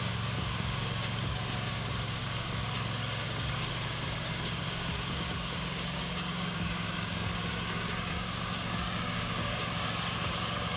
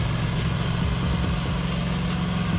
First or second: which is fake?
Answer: first